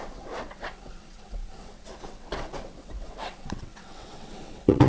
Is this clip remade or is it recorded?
remade